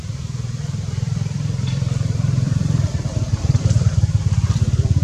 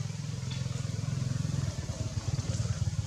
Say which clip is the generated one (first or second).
first